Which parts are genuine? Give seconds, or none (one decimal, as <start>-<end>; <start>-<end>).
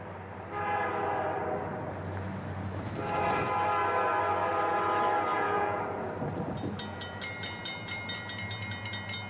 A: 0.0-5.3; 5.8-9.3